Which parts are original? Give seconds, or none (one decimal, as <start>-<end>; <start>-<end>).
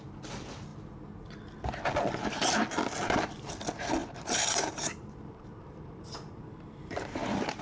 0.0-4.0